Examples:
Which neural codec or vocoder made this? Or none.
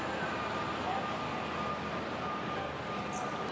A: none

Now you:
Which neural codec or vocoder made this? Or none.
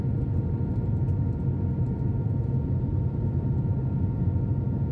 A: none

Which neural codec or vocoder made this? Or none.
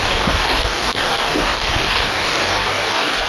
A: codec, DAC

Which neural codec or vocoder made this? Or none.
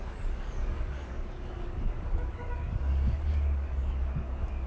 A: codec, DAC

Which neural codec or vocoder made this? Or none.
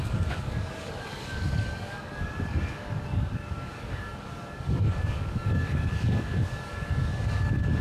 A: codec, DAC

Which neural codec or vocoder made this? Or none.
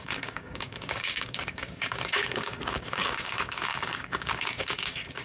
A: codec, DAC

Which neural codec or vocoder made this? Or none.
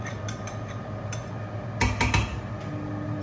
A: none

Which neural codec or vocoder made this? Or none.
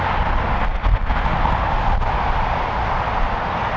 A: none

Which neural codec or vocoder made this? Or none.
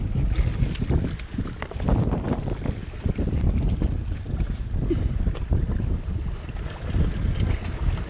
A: none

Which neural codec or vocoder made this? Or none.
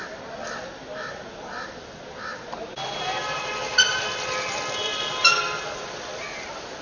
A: none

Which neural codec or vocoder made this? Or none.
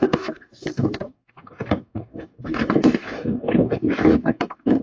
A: codec, DAC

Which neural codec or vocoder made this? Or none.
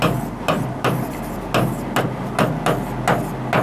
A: none